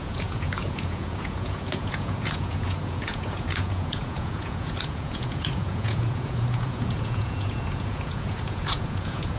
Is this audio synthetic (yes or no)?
yes